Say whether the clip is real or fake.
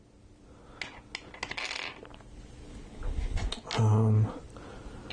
real